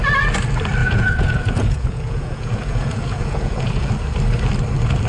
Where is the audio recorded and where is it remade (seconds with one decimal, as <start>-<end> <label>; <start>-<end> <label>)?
0.0-0.8 recorded; 0.8-3.9 remade; 3.9-5.1 recorded